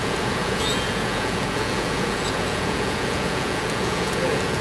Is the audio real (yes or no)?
no